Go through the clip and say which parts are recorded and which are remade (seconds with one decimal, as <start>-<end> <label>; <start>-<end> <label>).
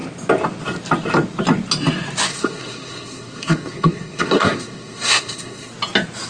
0.0-2.3 recorded; 2.3-5.7 remade; 5.7-6.3 recorded